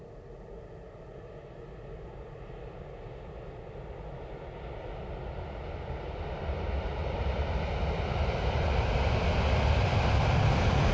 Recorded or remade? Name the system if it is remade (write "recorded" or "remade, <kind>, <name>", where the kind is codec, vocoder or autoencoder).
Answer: recorded